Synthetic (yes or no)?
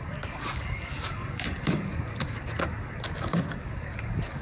yes